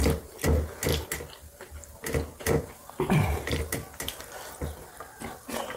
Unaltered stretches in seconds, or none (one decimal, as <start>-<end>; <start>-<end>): 0.0-5.8